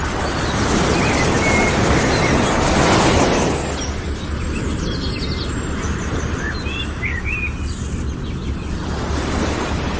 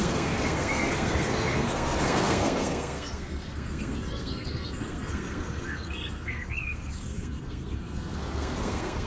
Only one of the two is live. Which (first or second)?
first